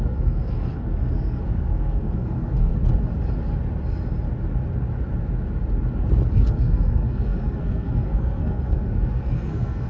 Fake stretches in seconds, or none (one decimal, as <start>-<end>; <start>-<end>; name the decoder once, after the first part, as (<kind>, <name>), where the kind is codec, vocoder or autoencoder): 0.0-2.7 (codec, SNAC); 6.3-9.9